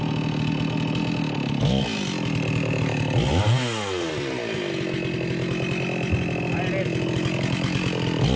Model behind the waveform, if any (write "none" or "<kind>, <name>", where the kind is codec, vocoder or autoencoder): none